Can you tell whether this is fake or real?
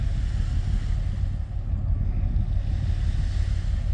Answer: real